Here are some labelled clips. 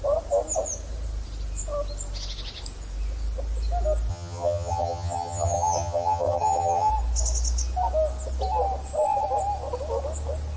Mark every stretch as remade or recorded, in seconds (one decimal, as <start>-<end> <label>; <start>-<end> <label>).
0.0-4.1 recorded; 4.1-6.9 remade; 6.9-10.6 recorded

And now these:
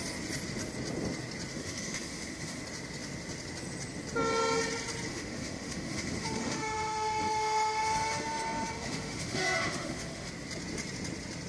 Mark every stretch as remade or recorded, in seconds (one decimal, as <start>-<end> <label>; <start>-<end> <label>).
0.0-1.5 recorded; 1.5-2.6 remade; 2.6-5.1 recorded; 5.1-10.3 remade; 10.3-11.5 recorded

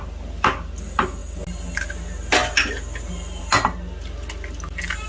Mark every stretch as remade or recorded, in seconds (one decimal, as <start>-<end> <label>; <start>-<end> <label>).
0.0-5.1 recorded